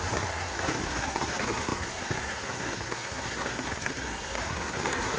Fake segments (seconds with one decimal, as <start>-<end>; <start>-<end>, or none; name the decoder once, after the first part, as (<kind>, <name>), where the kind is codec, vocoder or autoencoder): 0.0-5.2 (codec, SNAC)